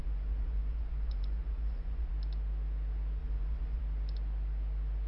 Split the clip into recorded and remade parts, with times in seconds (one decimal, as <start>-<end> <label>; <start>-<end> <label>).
0.0-2.1 remade; 2.1-3.2 recorded; 3.2-3.8 remade; 3.8-5.1 recorded